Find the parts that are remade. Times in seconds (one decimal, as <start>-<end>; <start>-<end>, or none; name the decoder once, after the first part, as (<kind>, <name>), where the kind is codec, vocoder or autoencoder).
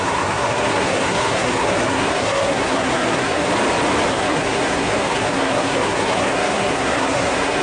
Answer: 0.0-3.5 (codec, SNAC); 4.1-7.6